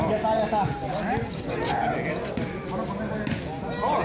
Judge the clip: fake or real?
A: real